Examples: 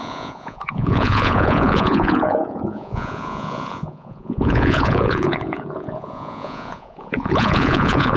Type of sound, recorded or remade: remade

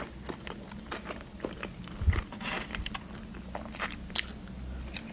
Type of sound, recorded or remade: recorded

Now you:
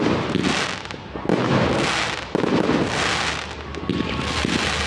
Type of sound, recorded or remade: recorded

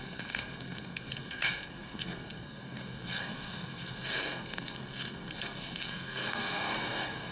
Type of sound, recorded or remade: remade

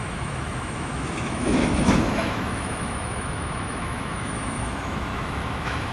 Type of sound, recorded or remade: remade